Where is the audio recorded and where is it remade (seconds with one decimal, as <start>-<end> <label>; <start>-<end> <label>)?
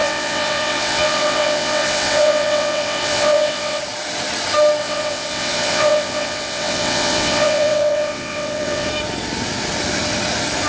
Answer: 0.0-3.8 remade; 3.8-4.8 recorded; 4.8-8.9 remade; 8.9-10.7 recorded